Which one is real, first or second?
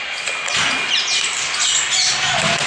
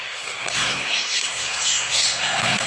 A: first